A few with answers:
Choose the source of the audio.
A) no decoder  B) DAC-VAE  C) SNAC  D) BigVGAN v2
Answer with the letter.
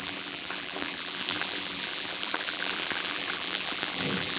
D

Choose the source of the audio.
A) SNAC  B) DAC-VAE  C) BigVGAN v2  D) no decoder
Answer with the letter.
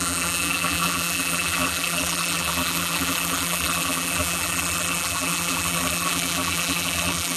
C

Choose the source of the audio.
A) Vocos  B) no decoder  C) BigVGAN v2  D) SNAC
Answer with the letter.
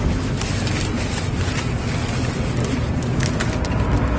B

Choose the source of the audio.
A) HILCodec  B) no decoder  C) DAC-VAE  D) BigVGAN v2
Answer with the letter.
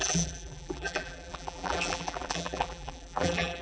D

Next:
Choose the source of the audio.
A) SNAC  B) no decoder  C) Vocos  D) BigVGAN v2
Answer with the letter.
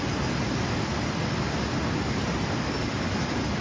B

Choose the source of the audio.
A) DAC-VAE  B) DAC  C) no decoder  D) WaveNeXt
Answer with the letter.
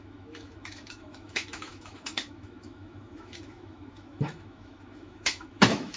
A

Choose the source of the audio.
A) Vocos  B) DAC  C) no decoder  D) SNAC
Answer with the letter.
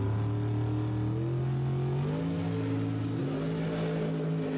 C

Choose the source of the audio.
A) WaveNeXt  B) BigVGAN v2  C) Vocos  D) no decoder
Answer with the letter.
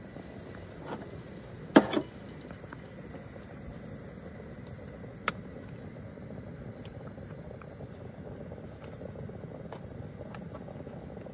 D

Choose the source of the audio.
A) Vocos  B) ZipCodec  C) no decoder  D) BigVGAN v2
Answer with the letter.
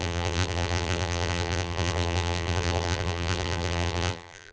D